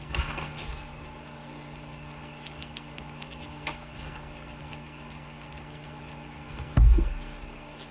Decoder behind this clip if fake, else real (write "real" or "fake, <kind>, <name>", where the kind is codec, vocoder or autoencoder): fake, codec, SNAC